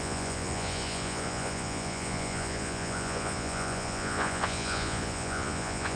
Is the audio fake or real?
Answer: fake